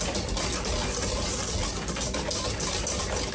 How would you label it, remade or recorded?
recorded